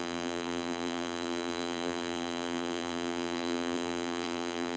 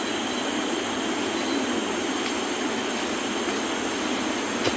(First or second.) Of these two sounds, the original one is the second